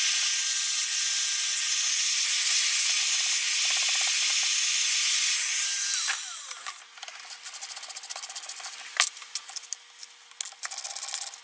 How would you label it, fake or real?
real